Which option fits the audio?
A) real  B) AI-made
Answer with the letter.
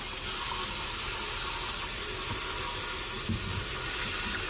A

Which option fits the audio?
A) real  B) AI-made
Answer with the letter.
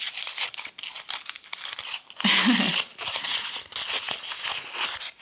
A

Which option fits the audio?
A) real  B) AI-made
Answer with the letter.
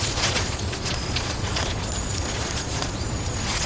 B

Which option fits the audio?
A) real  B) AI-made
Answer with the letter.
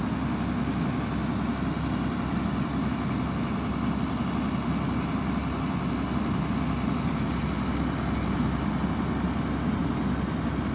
A